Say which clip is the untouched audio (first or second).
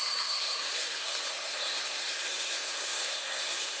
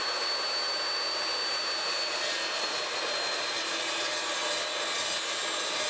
second